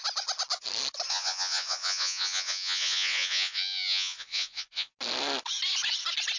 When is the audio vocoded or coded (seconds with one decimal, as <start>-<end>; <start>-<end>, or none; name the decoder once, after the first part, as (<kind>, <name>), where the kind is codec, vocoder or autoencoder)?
1.1-4.9 (vocoder, Vocos)